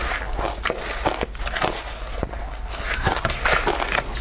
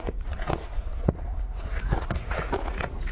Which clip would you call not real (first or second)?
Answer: second